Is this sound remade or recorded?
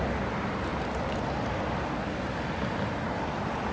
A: recorded